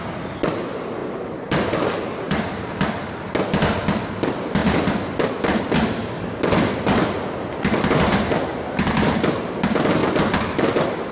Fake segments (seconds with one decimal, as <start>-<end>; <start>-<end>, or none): 1.0-2.8